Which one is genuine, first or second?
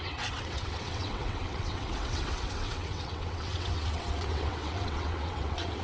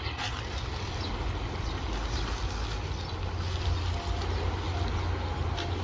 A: second